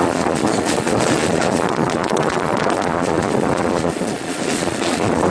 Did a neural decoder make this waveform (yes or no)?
yes